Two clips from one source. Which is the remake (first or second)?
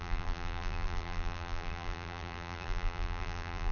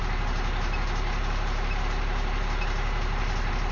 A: first